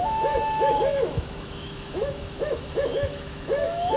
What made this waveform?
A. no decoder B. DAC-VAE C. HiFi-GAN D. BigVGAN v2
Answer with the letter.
B